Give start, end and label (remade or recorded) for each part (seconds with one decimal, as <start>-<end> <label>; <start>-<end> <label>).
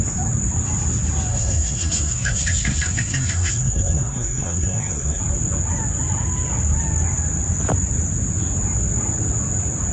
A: 0.0-1.3 recorded; 1.3-5.2 remade; 5.2-9.9 recorded